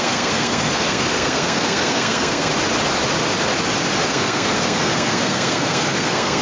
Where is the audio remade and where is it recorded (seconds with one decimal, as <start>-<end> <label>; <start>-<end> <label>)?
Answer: 0.0-2.5 remade; 2.5-4.1 recorded; 4.1-6.4 remade